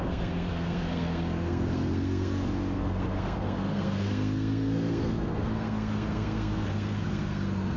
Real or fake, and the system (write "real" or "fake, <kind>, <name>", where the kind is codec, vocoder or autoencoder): fake, codec, SNAC